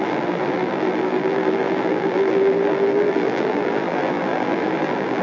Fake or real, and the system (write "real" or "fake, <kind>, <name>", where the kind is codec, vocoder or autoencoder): fake, vocoder, BigVGAN v2